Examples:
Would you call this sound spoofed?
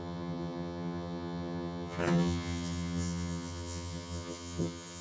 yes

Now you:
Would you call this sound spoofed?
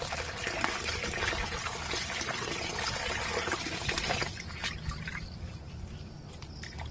no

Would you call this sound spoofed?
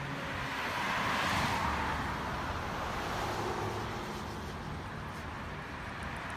no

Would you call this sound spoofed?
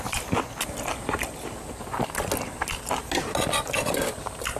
no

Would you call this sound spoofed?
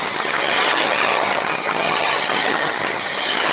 yes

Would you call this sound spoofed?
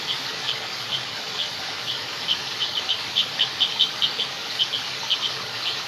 yes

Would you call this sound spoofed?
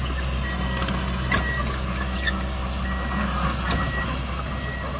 no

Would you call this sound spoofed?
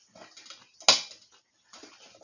no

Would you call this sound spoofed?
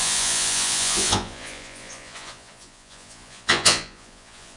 yes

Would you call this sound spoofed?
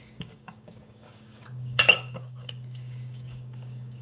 yes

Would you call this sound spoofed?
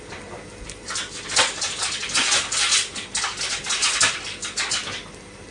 no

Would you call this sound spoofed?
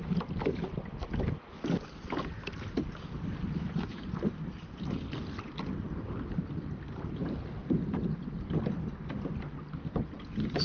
no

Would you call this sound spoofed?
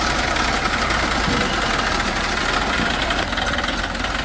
no